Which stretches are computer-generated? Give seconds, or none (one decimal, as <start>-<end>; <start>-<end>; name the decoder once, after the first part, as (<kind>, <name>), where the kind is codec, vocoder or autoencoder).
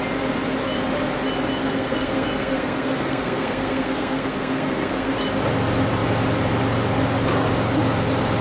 1.6-5.1 (codec, SNAC)